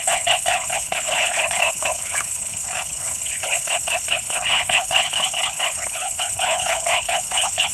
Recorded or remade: remade